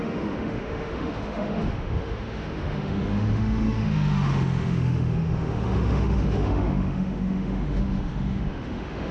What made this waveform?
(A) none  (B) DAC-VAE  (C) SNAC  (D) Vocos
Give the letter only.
B